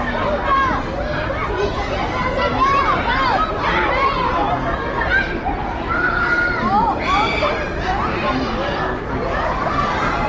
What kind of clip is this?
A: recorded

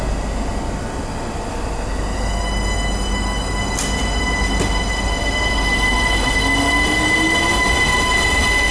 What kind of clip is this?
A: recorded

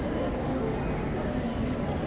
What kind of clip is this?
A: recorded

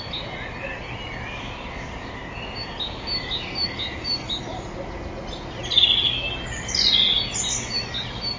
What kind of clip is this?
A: recorded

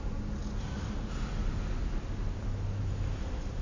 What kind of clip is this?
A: recorded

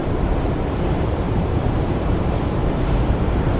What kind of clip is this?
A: remade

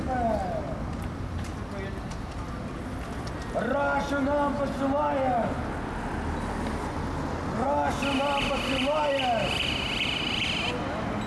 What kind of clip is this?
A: recorded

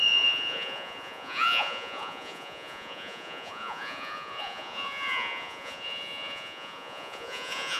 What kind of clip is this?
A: remade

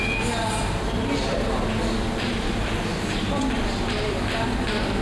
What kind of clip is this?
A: recorded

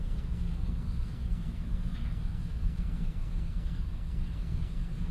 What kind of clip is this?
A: remade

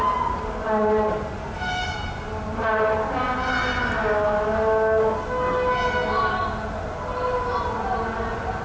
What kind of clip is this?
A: recorded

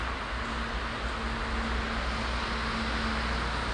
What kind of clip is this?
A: recorded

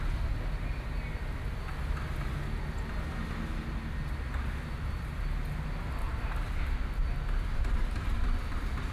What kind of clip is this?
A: recorded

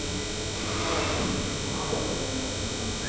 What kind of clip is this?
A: recorded